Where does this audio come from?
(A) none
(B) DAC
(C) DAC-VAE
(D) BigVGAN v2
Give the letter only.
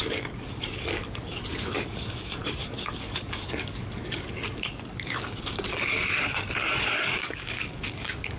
B